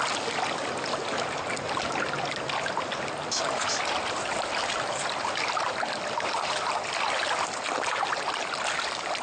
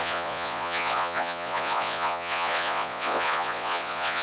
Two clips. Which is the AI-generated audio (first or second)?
second